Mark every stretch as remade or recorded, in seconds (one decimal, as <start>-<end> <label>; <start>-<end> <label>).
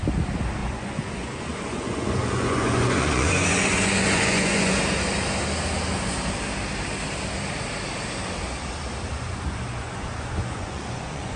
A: 0.0-0.6 recorded; 0.6-4.8 remade; 4.8-9.1 recorded; 9.1-11.4 remade